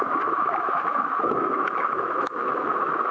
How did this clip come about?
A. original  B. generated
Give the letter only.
B